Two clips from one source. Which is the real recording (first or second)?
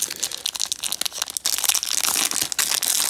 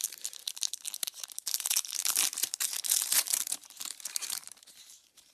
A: first